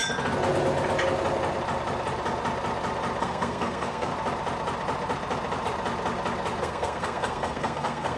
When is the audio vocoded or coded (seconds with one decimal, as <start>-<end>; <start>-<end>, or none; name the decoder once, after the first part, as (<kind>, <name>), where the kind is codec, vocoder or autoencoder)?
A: 3.2-4.1 (codec, SNAC); 6.6-8.2